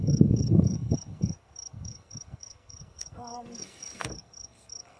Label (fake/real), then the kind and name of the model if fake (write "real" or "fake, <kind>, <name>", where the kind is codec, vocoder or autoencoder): fake, codec, SNAC